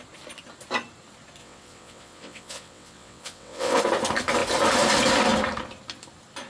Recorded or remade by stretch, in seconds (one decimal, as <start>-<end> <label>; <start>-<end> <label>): 0.0-1.4 recorded; 1.4-3.8 remade; 3.8-6.5 recorded